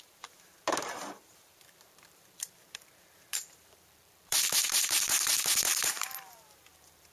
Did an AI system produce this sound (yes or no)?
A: yes